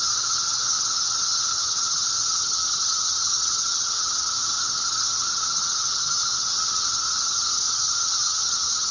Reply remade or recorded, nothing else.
remade